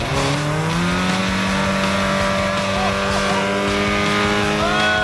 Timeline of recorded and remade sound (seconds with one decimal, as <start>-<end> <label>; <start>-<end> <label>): 0.0-5.0 recorded